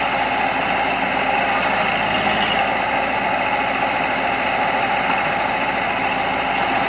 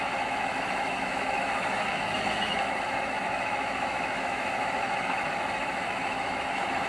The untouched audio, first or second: first